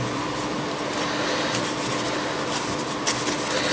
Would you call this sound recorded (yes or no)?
yes